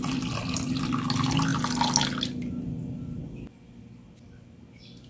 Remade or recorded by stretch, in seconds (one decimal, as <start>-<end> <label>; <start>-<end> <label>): 0.0-5.1 recorded